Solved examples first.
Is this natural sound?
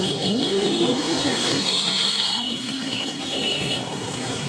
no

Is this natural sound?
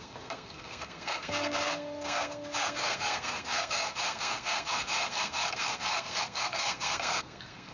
no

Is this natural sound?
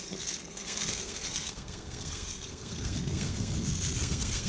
no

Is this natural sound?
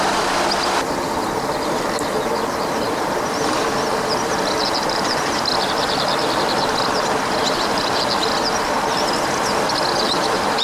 yes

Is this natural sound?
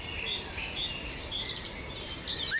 yes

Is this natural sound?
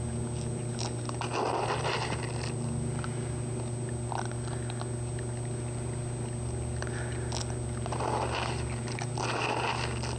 yes